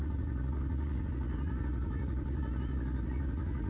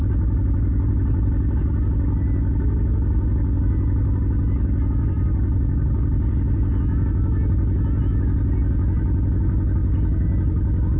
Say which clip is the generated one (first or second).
first